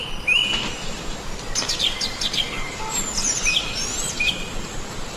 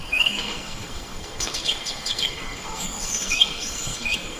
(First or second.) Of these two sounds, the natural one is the first